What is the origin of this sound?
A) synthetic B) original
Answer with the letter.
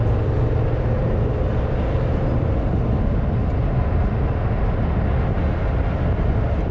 B